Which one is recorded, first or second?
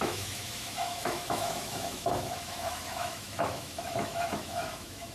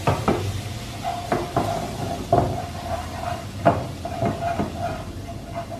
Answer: second